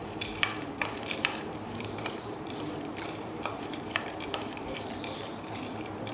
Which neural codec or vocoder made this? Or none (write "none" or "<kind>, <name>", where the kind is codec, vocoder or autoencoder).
vocoder, BigVGAN v2